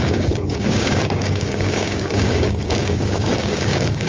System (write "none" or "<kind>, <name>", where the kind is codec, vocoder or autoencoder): codec, DAC